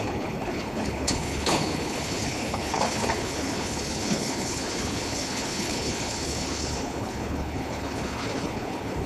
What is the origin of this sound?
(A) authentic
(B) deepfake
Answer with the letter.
B